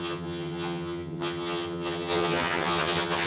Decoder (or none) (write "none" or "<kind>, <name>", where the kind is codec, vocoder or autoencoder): vocoder, HiFi-GAN